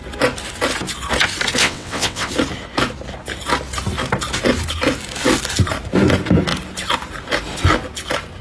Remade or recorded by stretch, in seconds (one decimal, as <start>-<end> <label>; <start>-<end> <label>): 0.0-1.6 recorded; 1.6-2.3 remade; 2.3-8.4 recorded